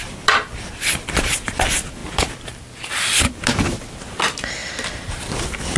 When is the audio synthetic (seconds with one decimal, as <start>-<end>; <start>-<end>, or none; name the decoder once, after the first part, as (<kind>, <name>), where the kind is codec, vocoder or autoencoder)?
4.6-5.3 (vocoder, BigVGAN v2)